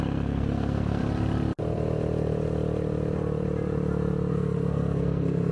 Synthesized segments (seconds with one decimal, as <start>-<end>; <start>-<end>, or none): 0.0-1.0; 4.3-5.5